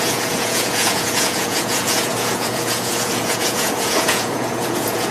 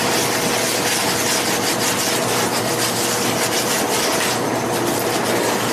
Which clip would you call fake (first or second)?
first